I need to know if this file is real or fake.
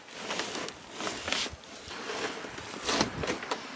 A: real